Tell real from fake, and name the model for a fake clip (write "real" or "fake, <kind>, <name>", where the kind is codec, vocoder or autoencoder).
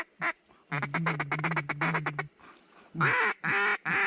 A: real